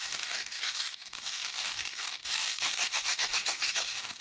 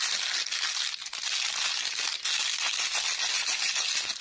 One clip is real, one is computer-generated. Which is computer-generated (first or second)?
first